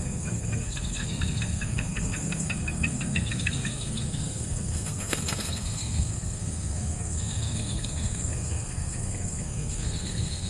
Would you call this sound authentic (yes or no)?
no